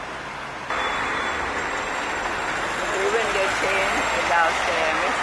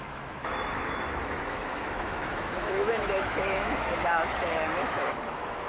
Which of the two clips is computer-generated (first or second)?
second